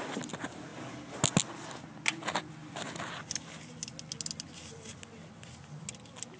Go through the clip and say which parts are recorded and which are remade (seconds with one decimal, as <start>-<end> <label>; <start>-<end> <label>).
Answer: 0.0-6.4 recorded